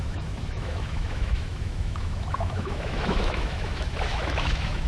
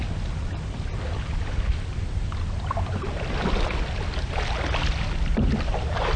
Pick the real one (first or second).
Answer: second